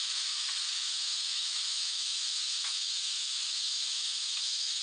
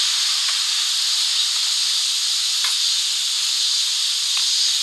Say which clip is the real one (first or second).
second